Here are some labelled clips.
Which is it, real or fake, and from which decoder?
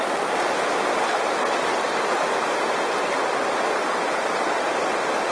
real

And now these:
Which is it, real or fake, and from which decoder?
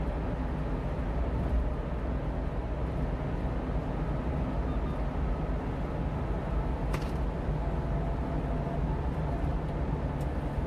real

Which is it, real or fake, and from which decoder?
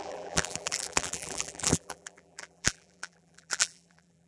fake, vocoder, BigVGAN v2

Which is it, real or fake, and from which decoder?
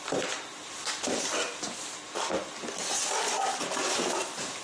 real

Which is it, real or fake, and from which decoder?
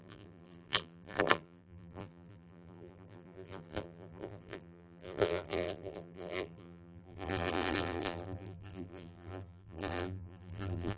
fake, vocoder, BigVGAN v2